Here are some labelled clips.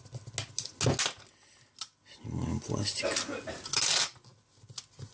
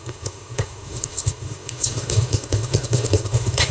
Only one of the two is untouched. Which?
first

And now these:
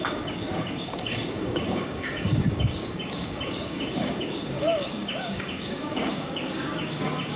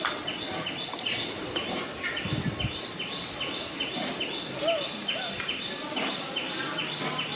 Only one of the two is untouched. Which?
second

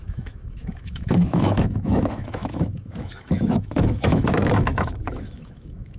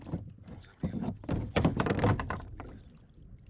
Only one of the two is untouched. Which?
second